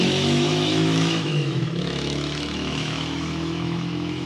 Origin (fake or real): fake